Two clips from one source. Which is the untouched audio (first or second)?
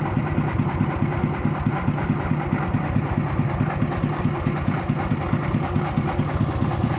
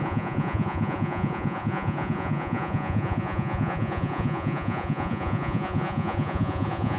first